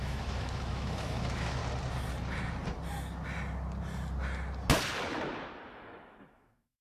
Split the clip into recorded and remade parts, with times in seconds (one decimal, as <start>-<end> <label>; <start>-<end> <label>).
0.0-1.6 remade; 1.6-5.7 recorded; 5.7-6.8 remade